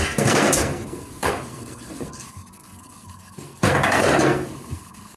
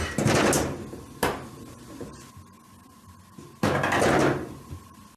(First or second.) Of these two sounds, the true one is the second